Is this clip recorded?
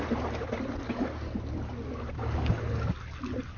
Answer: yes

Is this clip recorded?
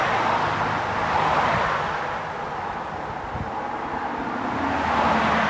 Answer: yes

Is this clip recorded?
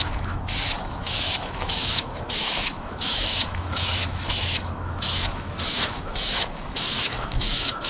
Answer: no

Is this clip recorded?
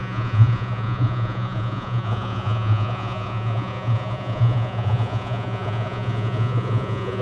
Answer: no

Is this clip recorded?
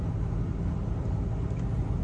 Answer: yes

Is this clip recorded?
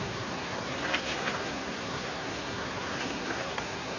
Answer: no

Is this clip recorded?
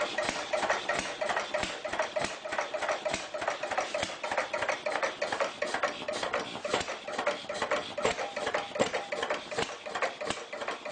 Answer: yes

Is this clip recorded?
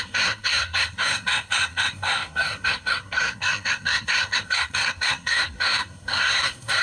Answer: no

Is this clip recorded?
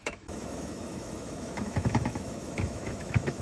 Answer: no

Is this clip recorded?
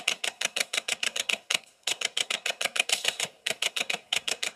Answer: no